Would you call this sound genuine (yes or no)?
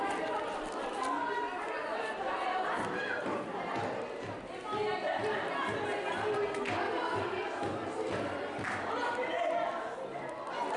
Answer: yes